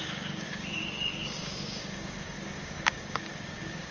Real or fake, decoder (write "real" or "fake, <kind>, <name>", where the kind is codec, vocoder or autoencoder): fake, codec, DAC